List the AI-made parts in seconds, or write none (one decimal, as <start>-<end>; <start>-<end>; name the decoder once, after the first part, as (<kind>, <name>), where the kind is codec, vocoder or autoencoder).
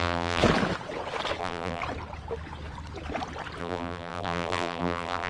0.0-0.4 (vocoder, BigVGAN v2); 1.4-1.8; 3.6-5.3